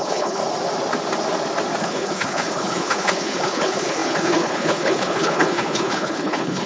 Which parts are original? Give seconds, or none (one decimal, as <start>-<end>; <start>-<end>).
0.4-1.8